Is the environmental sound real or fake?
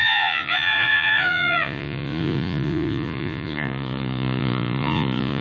fake